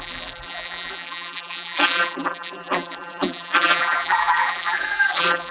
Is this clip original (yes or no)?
no